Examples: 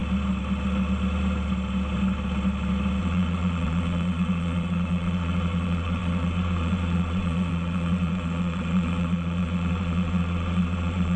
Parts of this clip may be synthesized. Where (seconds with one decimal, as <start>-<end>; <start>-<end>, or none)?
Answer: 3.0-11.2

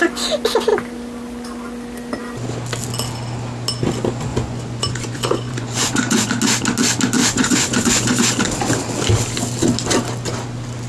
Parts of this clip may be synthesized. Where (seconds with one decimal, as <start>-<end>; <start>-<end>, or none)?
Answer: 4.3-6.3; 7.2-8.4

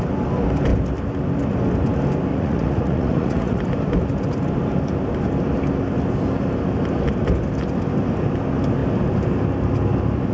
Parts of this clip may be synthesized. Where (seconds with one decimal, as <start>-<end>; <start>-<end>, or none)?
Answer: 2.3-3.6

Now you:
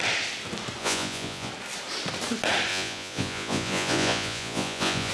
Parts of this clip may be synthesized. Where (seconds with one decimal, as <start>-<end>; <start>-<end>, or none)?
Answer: 0.8-1.5; 2.7-5.1